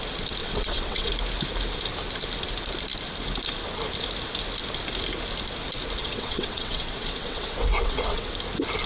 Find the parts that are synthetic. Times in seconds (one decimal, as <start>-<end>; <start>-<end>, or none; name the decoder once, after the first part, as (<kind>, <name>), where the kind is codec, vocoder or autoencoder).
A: 0.4-1.1 (vocoder, WaveNeXt); 6.0-8.3